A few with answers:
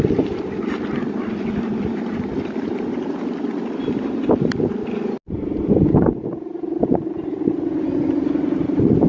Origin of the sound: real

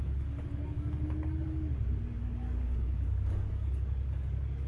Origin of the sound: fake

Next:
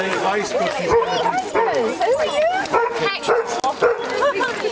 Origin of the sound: real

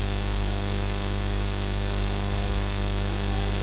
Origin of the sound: fake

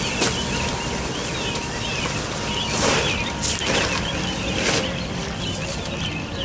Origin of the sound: real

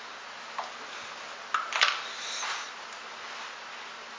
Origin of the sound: real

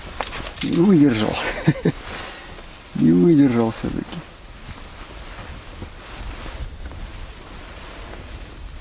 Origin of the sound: real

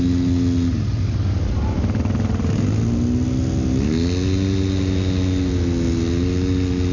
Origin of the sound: real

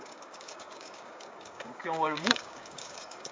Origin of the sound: fake